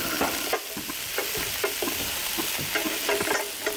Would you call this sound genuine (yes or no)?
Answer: yes